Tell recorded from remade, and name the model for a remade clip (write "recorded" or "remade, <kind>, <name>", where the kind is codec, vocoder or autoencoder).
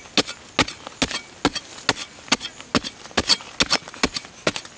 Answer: recorded